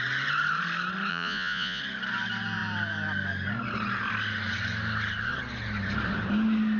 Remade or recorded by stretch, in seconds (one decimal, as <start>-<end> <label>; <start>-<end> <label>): 0.0-1.1 recorded; 1.1-1.8 remade; 1.8-6.8 recorded